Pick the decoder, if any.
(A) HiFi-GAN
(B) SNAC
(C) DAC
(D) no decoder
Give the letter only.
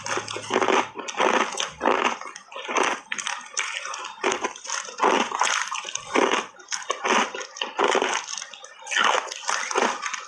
D